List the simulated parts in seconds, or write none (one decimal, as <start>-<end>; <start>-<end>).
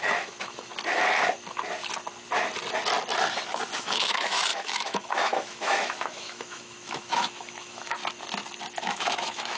0.0-0.7; 3.8-8.0; 8.8-9.6